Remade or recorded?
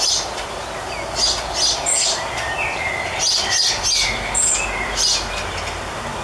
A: recorded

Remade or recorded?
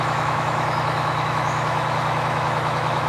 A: remade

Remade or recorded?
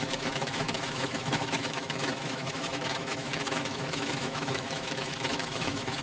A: remade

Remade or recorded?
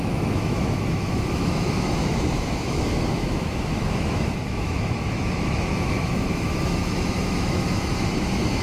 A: remade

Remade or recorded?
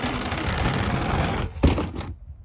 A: recorded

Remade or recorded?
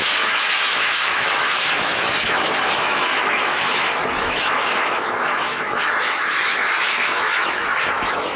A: remade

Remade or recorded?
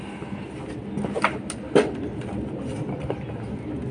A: recorded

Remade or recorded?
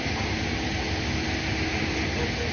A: recorded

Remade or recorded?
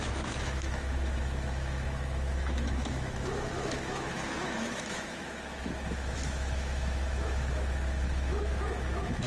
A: remade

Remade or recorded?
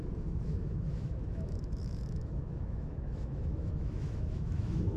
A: remade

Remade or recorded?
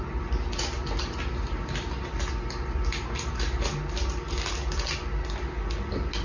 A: recorded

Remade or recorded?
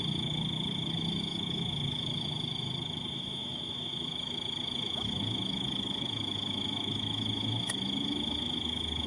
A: remade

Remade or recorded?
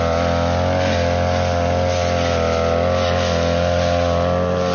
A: recorded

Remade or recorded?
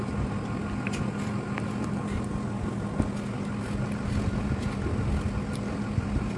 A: recorded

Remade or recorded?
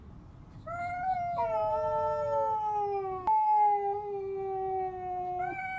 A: recorded